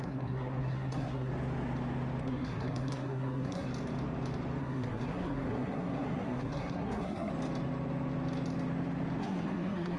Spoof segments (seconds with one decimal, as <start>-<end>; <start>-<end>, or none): 0.0-1.3; 2.2-3.7; 4.6-7.3; 9.2-10.0